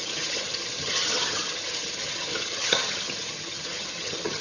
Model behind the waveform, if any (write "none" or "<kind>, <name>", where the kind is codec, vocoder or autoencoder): vocoder, HiFi-GAN